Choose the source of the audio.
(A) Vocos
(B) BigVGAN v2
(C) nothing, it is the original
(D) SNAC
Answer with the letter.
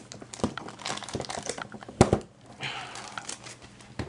C